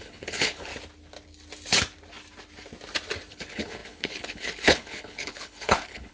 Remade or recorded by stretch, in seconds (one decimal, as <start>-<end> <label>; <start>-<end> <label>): 0.0-0.7 remade; 0.7-3.3 recorded; 3.3-6.1 remade

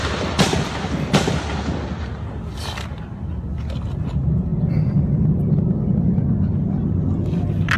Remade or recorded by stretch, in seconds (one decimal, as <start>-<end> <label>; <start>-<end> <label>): 0.0-7.8 recorded

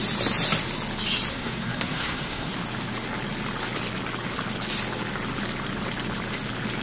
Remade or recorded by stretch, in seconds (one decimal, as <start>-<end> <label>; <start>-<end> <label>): 0.0-1.3 recorded; 1.3-2.5 remade; 2.5-6.8 recorded

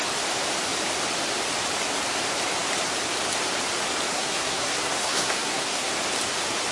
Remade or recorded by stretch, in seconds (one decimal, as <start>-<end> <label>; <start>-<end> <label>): 0.0-4.1 recorded; 4.1-5.9 remade; 5.9-6.7 recorded

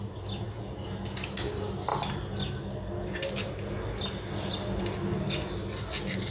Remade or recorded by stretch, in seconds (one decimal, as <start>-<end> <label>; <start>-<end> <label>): 0.0-6.3 recorded

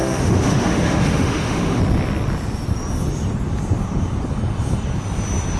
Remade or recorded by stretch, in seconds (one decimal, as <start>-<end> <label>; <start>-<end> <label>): 0.0-1.8 remade; 1.8-5.6 recorded

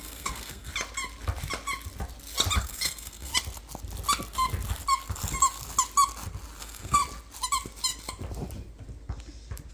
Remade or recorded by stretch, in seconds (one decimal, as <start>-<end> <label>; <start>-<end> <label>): 0.0-0.7 remade; 0.7-2.6 recorded; 2.6-3.3 remade; 3.3-6.6 recorded; 6.6-7.0 remade; 7.0-9.7 recorded

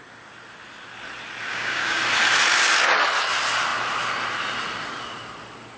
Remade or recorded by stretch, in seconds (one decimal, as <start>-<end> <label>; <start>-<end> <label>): 0.0-1.5 recorded; 1.5-2.0 remade; 2.0-5.8 recorded